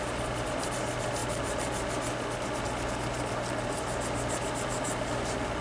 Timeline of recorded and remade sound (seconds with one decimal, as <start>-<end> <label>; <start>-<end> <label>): 0.0-5.6 recorded